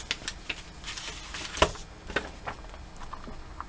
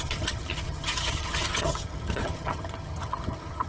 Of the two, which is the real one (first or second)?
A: first